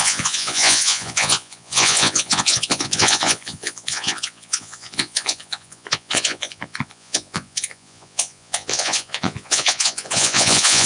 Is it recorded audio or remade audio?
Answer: remade